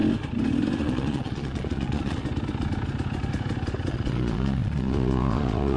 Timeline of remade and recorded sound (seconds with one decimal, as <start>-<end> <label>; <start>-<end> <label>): 0.0-0.8 recorded; 0.8-2.2 remade; 2.2-3.9 recorded; 3.9-5.8 remade